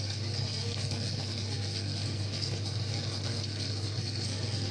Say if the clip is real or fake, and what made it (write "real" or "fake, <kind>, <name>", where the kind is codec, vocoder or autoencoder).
fake, codec, SNAC